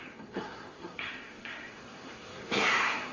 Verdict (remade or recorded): remade